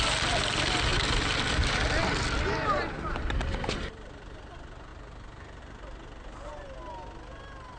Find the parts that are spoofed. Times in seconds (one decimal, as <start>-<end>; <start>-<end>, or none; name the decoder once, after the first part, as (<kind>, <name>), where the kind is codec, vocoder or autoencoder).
none